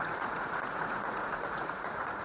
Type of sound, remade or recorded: remade